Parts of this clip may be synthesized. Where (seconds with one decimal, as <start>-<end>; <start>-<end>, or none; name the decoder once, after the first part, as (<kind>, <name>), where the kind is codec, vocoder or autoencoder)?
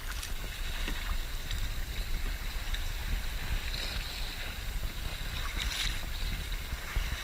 none